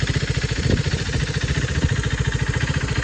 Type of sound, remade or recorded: recorded